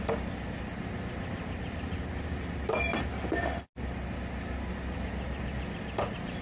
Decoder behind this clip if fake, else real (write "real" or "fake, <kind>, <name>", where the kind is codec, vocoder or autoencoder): real